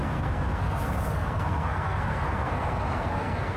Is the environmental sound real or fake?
fake